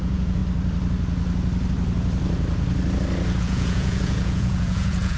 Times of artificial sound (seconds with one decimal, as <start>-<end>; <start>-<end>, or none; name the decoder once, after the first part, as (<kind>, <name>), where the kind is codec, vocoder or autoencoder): 0.0-0.4 (vocoder, Vocos); 3.4-5.2